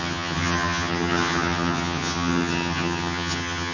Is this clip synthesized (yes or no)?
yes